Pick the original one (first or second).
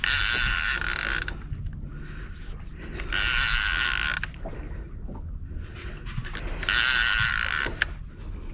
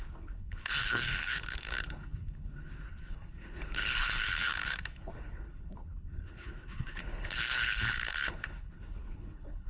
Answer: first